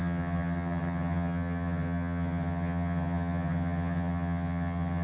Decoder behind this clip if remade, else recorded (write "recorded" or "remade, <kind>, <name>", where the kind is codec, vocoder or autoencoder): remade, vocoder, HiFi-GAN